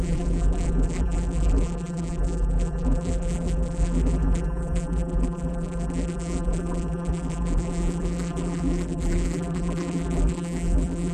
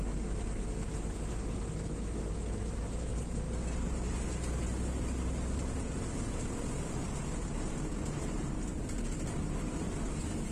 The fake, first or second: first